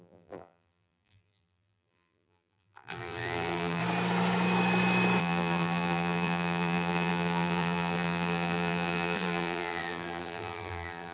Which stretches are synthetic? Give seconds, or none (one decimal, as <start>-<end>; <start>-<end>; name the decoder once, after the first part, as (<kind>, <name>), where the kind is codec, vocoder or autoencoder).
0.0-3.8 (vocoder, BigVGAN v2); 5.2-11.1